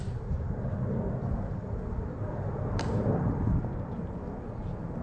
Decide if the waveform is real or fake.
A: real